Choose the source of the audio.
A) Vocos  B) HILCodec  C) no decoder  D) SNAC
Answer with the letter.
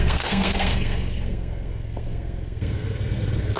D